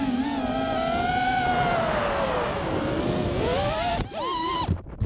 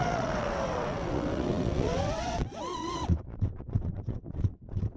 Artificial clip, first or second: second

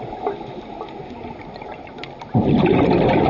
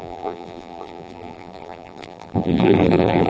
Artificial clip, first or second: second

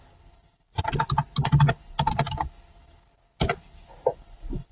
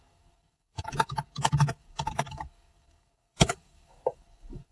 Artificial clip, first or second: second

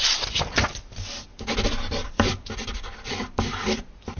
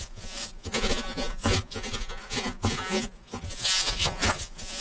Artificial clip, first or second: second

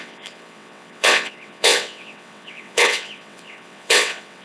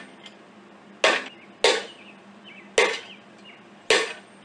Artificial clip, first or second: first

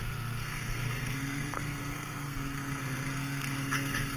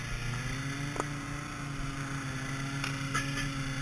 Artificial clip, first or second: first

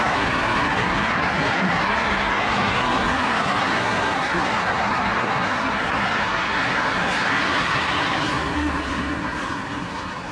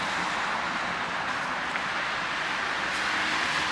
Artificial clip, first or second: first